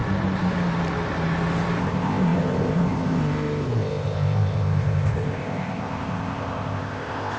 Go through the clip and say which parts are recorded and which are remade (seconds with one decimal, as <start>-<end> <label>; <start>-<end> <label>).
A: 0.0-1.8 recorded; 1.8-7.4 remade